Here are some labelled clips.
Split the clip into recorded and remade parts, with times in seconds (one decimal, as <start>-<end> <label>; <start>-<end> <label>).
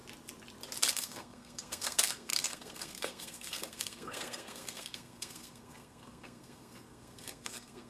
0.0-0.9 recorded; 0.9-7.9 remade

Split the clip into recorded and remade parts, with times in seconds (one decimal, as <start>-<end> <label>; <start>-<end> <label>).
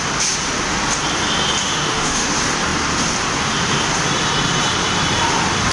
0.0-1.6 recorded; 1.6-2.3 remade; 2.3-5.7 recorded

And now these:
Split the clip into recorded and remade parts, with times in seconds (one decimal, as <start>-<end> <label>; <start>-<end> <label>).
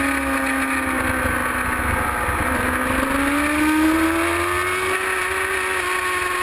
0.0-6.4 recorded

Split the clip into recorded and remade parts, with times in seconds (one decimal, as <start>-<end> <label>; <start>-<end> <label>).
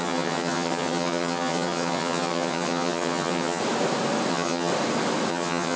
0.0-3.6 remade; 3.6-4.3 recorded; 4.3-4.7 remade; 4.7-5.3 recorded; 5.3-5.8 remade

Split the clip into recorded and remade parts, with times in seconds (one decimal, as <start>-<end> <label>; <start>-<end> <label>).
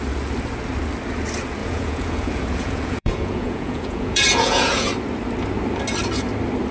0.0-1.6 recorded; 1.6-4.9 remade; 4.9-6.7 recorded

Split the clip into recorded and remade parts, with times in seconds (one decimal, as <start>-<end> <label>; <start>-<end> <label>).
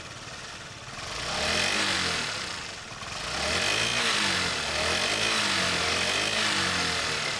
0.0-7.4 recorded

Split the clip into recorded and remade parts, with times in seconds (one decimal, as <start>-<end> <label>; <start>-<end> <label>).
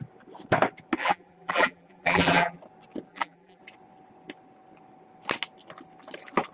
0.0-1.0 recorded; 1.0-2.6 remade; 2.6-3.1 recorded; 3.1-3.6 remade; 3.6-6.5 recorded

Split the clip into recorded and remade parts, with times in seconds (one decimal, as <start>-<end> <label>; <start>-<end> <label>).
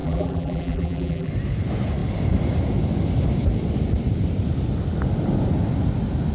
0.0-1.3 remade; 1.3-6.3 recorded